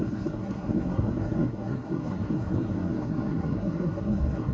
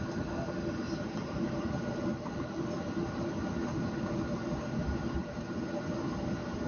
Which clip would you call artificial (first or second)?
first